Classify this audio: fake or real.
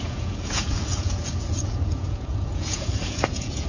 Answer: fake